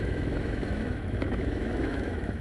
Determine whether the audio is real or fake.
fake